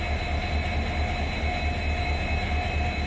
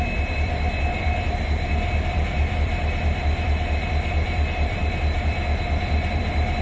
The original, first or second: first